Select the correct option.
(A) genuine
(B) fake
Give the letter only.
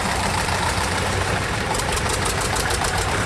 B